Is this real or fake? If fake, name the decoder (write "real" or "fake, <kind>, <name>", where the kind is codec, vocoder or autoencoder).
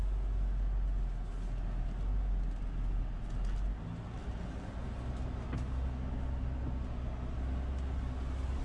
real